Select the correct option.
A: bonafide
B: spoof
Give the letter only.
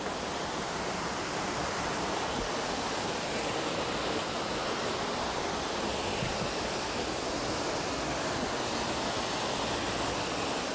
A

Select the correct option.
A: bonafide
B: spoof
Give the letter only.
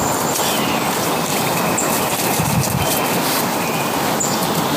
A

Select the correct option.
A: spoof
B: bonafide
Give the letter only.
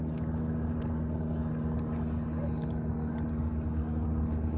B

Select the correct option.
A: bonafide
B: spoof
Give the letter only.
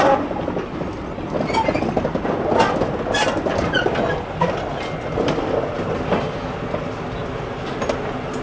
A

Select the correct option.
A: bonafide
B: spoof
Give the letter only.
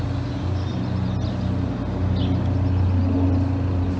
A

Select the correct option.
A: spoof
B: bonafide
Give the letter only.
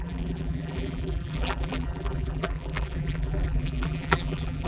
A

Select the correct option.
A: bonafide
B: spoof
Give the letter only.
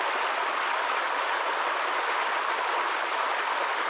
A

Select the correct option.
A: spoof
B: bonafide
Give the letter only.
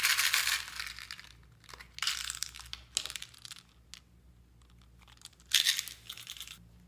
B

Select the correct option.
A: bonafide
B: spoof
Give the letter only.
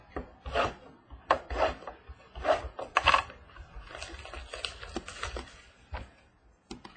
A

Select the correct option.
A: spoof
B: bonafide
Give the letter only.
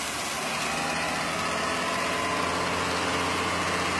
B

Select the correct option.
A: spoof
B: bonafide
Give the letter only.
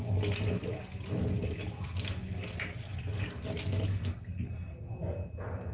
B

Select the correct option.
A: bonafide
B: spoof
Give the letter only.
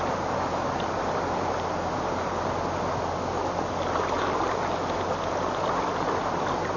A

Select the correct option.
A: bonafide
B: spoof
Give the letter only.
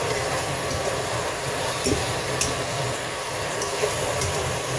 B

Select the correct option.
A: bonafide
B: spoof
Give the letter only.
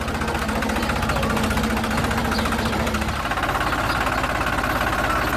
A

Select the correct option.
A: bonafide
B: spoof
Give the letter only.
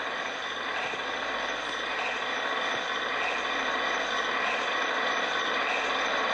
A